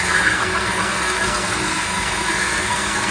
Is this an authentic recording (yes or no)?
no